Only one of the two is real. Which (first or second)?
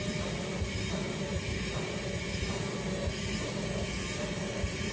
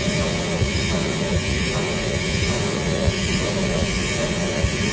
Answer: first